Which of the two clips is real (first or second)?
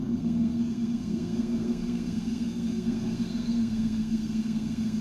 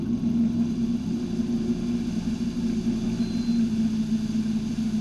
second